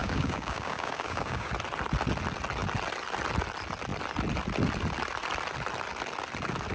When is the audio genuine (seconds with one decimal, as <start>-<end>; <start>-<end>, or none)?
1.5-6.7